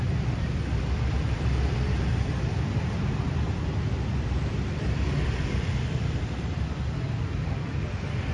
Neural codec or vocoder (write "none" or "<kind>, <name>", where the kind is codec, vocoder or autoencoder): vocoder, BigVGAN v2